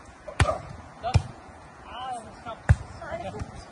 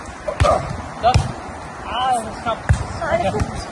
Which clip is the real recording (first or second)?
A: second